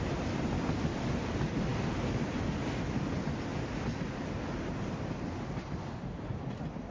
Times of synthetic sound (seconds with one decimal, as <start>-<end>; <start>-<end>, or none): none